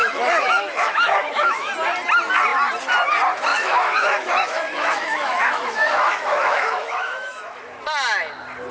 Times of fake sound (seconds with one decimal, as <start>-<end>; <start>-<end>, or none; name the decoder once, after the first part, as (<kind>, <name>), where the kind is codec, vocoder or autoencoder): 0.0-1.7 (autoencoder, DAC-VAE); 3.5-7.8